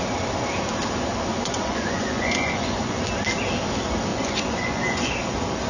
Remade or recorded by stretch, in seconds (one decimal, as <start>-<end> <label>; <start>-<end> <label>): 0.0-1.3 recorded; 1.3-3.0 remade; 3.0-4.1 recorded; 4.1-5.1 remade; 5.1-5.7 recorded

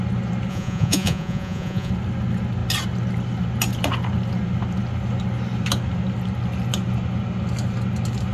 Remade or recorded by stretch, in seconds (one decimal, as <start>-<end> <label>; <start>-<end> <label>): 0.0-0.5 recorded; 0.5-1.9 remade; 1.9-8.3 recorded

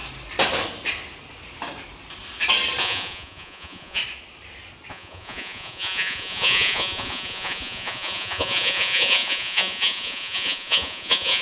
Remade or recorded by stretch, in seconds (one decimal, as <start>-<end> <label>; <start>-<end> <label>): 0.0-2.8 recorded; 2.8-4.0 remade; 4.0-4.9 recorded; 4.9-11.4 remade

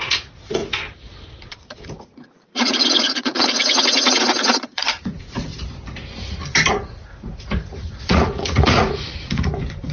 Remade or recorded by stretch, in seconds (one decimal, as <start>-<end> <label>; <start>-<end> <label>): 0.0-0.6 remade; 0.6-1.4 recorded; 1.4-5.5 remade; 5.5-6.7 recorded; 6.7-9.9 remade

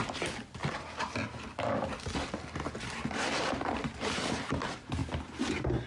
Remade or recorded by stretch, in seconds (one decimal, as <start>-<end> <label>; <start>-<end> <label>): 0.0-5.9 recorded

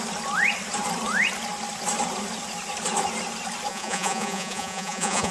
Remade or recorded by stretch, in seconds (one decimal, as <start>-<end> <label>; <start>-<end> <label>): 0.0-3.7 recorded; 3.7-5.3 remade

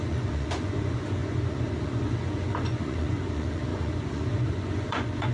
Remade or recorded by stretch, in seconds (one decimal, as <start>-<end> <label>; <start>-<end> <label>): 0.0-5.3 remade